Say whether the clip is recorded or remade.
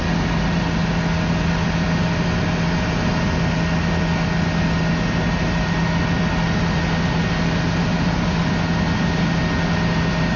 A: recorded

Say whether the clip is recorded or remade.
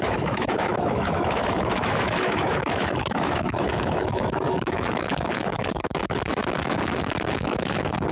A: remade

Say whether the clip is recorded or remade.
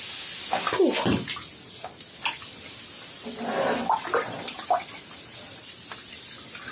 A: recorded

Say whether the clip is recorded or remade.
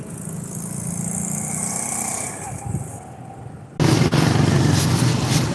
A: recorded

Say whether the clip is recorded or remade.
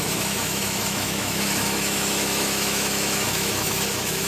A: remade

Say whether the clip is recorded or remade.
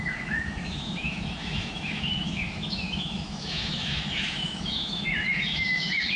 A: remade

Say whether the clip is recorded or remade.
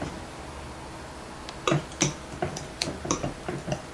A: recorded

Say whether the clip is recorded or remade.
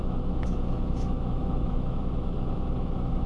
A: remade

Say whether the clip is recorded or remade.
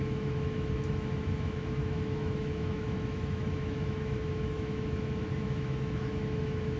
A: remade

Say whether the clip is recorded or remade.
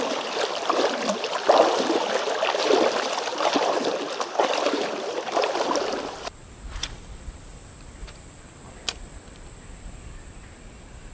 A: recorded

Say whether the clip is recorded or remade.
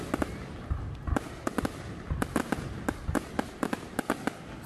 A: recorded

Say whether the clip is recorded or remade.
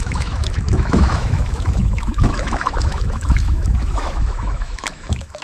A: remade